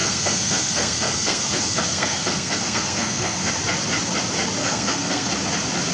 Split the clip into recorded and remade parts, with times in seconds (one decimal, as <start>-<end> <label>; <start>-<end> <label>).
0.0-3.5 remade; 3.5-4.6 recorded; 4.6-5.3 remade; 5.3-5.9 recorded